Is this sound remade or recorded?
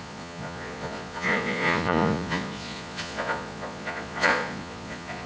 remade